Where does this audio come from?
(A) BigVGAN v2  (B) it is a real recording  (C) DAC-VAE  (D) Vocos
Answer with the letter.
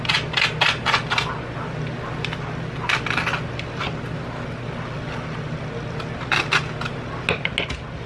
B